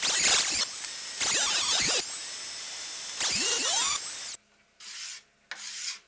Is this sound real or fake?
real